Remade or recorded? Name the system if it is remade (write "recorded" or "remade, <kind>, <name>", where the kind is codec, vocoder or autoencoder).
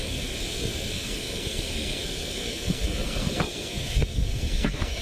remade, codec, SNAC